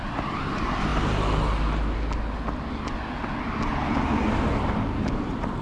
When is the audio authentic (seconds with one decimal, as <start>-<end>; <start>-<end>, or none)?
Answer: 0.9-4.3